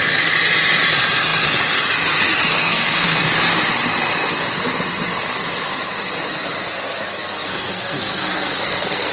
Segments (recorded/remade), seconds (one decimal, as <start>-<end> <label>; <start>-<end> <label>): 0.0-2.6 recorded; 2.6-3.2 remade; 3.2-7.1 recorded; 7.1-9.1 remade